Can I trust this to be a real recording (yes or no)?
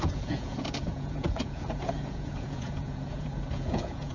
no